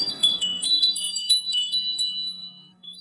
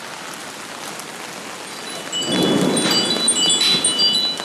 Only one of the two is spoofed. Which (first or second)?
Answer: first